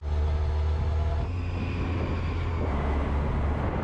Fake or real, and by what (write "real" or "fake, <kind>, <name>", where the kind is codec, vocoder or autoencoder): real